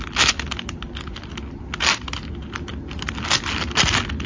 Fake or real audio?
real